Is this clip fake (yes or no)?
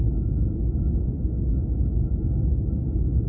no